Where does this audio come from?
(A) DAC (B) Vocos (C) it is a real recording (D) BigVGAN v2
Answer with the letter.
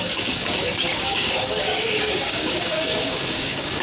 A